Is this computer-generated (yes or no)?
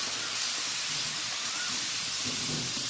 no